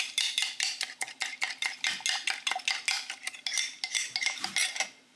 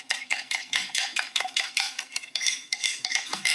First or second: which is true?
first